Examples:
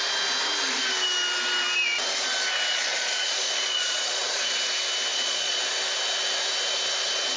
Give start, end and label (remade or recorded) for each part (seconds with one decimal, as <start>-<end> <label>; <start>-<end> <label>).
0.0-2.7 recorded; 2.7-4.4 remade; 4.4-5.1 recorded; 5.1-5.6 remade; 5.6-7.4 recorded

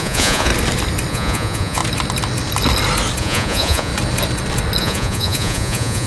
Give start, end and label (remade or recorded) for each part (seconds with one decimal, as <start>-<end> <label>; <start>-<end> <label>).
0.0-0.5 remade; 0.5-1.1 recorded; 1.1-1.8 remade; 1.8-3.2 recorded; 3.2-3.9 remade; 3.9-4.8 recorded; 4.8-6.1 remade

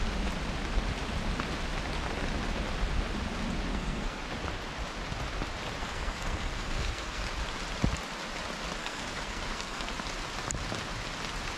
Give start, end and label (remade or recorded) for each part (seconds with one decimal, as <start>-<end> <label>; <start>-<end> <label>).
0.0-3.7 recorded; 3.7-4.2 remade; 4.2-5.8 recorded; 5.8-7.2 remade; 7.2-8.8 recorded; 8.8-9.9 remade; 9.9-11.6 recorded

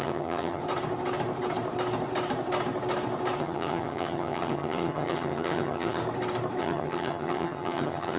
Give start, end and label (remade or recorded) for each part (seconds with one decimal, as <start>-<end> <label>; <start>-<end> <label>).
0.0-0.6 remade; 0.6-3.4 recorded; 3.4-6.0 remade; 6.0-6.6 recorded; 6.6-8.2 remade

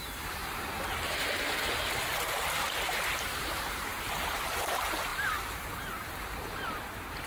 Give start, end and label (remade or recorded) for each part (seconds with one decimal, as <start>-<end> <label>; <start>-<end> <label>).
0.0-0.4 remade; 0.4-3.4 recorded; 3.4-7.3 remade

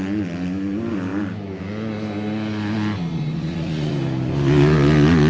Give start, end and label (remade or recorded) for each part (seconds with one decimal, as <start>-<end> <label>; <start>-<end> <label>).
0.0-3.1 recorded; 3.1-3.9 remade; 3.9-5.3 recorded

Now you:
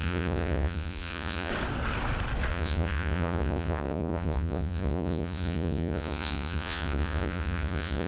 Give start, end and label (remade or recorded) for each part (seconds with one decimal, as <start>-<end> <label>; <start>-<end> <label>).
0.0-1.5 remade; 1.5-2.5 recorded; 2.5-8.1 remade